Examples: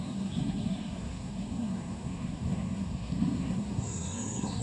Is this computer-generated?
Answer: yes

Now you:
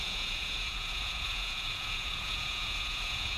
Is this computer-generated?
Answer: yes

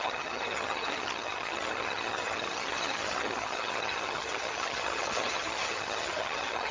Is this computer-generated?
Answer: yes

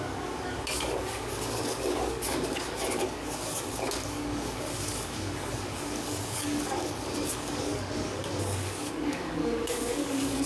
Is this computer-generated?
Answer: yes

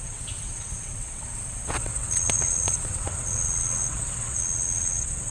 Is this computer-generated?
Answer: yes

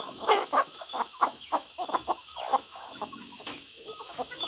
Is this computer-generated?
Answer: yes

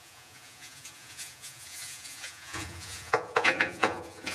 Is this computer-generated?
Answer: yes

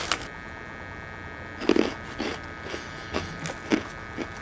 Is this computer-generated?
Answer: no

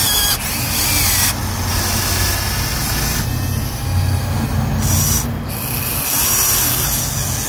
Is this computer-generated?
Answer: no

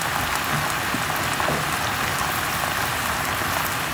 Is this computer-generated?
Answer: no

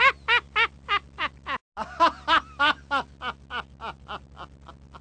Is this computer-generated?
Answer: no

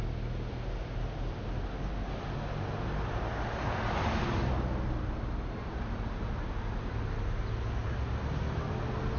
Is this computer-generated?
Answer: no